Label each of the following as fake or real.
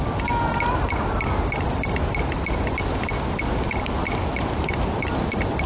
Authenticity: real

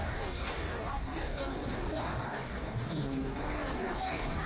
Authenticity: fake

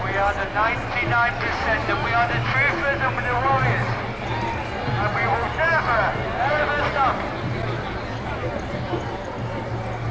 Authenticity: real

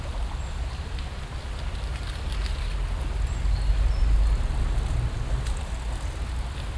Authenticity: real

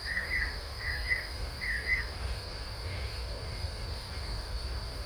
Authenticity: fake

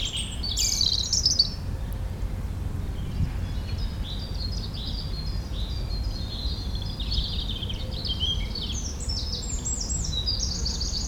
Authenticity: real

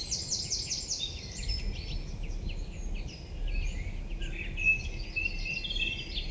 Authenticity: real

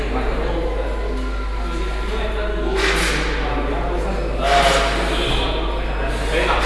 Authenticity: real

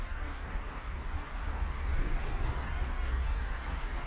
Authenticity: fake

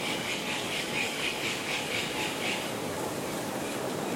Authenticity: fake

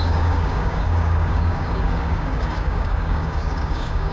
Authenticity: fake